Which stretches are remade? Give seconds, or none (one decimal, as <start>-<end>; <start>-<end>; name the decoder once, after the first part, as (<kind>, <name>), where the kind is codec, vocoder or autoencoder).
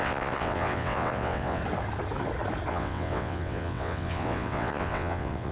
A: 0.0-1.6 (vocoder, WaveNeXt); 2.7-5.5